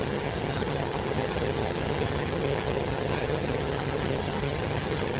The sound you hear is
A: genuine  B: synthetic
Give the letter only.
B